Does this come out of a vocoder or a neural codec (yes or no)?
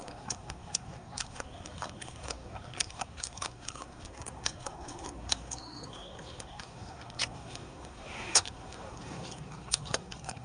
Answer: yes